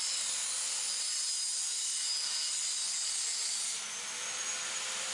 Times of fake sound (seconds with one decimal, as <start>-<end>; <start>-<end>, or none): none